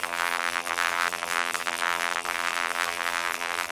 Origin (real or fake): fake